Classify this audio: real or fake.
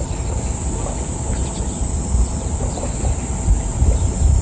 real